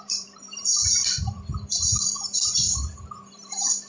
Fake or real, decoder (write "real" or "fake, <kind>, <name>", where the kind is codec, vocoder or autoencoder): fake, vocoder, BigVGAN v2